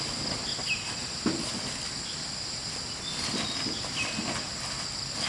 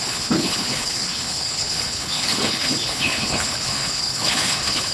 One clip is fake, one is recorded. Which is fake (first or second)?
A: second